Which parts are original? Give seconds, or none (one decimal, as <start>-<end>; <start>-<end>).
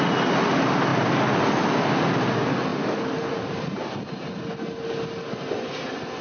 0.0-6.2